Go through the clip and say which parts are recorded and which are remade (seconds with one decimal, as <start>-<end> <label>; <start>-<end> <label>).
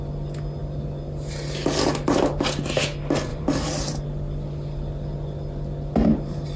0.0-3.3 recorded; 3.3-4.0 remade; 4.0-6.6 recorded